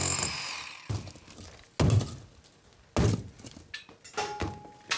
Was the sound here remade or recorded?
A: recorded